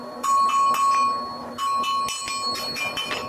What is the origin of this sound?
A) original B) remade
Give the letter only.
A